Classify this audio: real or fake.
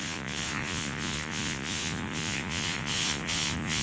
fake